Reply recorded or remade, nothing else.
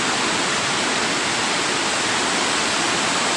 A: recorded